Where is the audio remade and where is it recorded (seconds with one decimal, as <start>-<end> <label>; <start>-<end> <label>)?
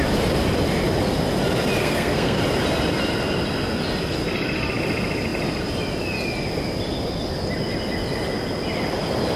0.0-1.8 recorded; 1.8-2.4 remade; 2.4-9.4 recorded